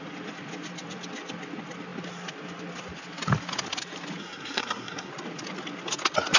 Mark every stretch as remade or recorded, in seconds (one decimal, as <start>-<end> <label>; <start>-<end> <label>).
0.0-4.2 recorded; 4.2-5.1 remade; 5.1-6.4 recorded